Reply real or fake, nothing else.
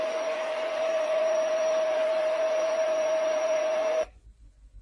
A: fake